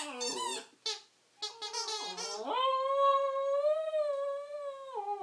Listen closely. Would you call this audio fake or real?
real